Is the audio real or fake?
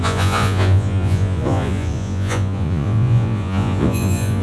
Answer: fake